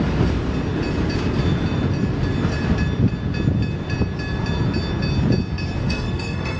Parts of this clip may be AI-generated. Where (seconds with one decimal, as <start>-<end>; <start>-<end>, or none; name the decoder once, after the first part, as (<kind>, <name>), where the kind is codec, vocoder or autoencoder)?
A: 5.8-6.6 (codec, SNAC)